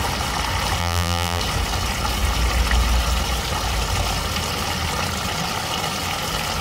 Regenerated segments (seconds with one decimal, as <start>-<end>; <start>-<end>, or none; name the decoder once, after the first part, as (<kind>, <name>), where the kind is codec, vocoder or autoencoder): 0.8-1.4 (vocoder, BigVGAN v2)